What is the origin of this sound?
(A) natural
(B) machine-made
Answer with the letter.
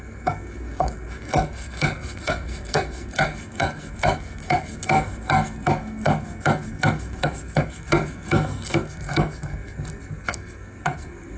B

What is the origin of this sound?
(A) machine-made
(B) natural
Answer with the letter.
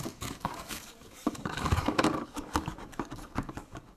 A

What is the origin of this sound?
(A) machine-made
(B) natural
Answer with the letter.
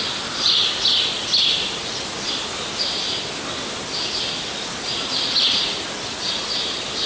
B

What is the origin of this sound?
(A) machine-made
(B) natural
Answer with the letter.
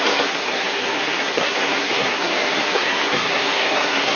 A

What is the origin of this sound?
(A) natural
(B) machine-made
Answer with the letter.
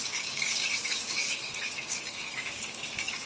B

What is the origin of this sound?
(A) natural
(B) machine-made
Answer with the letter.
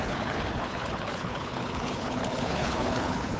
B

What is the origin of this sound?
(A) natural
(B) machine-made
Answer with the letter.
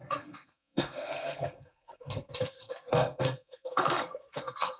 B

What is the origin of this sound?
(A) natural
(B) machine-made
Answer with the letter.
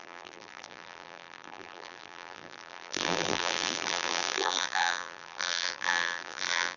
B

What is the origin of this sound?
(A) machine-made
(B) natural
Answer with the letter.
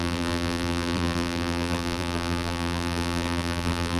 A